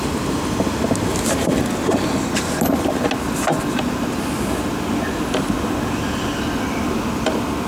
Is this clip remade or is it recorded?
recorded